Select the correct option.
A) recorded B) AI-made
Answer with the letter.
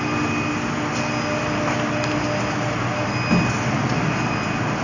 A